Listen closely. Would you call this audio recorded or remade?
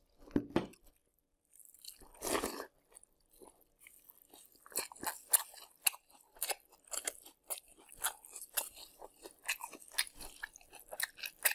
recorded